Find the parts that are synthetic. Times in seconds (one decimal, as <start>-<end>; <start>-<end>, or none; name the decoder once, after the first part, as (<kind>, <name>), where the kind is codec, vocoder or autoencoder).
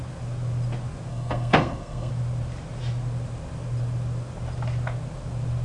1.1-2.1 (codec, SNAC)